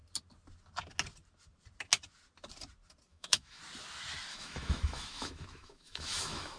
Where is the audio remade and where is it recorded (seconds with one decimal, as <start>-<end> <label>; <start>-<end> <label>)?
0.0-3.1 recorded; 3.1-3.6 remade; 3.6-4.3 recorded; 4.3-6.6 remade